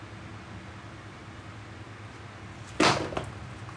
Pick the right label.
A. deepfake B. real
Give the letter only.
B